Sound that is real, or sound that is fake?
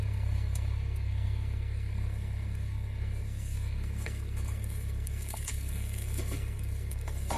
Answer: fake